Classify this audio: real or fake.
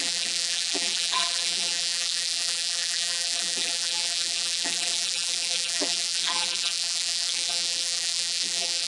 fake